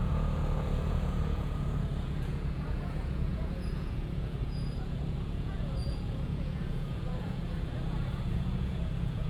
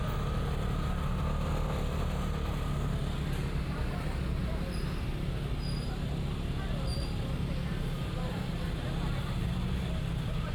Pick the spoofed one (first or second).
first